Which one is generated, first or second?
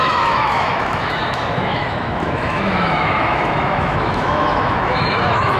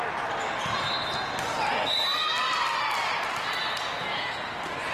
first